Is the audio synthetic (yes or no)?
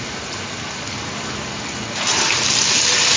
no